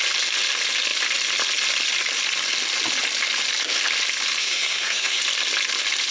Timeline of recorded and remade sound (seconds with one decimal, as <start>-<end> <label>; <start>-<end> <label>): 0.0-4.4 recorded; 4.4-5.2 remade; 5.2-6.1 recorded